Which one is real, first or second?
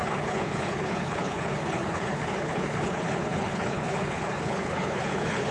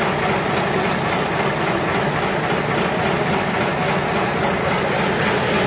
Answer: second